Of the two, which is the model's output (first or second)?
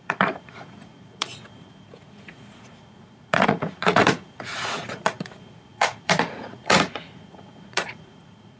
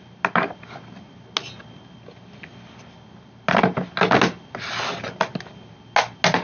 first